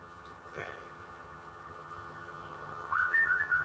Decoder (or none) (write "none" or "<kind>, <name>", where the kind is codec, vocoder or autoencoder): vocoder, HiFi-GAN